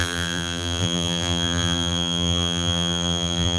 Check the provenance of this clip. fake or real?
fake